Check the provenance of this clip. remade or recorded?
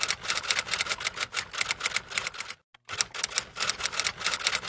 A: recorded